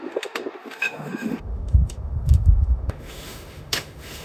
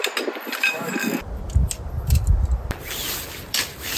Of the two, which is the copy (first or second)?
first